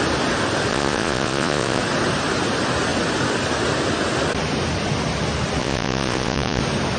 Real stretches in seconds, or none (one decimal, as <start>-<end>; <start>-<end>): 0.0-0.7; 1.8-5.6; 6.6-7.0